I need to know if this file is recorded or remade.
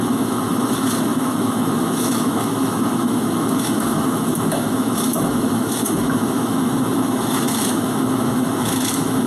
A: remade